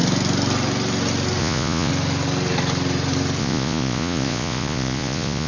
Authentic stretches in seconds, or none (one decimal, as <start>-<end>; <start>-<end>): 0.0-1.4; 1.9-3.4